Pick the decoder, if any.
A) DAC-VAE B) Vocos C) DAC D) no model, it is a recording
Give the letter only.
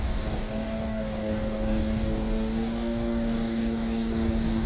C